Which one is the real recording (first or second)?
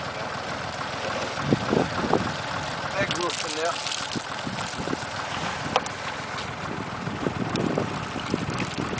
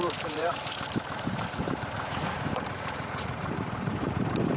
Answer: first